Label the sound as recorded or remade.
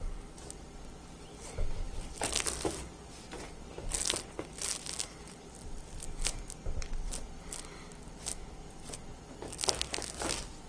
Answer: recorded